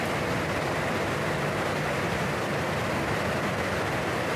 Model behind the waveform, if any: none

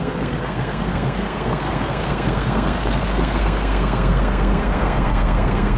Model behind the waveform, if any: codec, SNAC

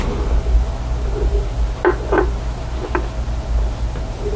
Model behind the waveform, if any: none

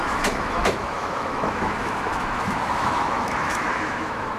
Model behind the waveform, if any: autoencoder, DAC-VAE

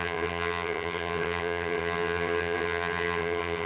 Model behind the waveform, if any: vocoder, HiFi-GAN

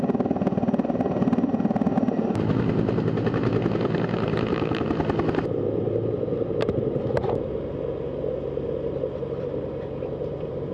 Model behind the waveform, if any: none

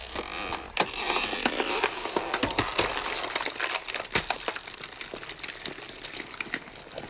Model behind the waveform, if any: none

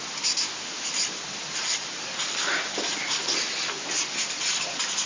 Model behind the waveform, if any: none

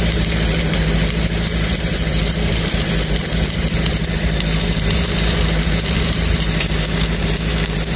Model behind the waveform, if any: vocoder, BigVGAN v2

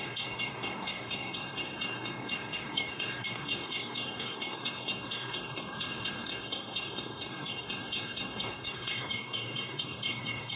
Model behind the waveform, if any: codec, SNAC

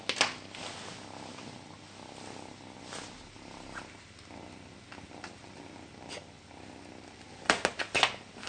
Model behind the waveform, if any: none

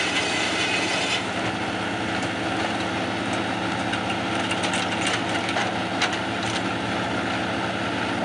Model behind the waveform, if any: none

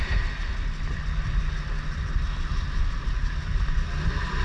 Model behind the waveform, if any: none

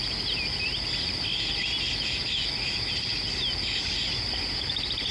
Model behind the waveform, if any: none